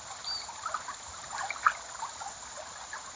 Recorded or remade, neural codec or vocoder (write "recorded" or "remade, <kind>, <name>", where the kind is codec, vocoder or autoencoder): recorded